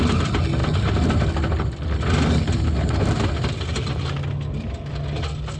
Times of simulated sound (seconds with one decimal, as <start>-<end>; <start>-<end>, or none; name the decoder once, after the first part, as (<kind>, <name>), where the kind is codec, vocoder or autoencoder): none